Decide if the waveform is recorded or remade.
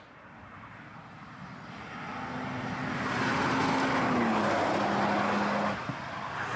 recorded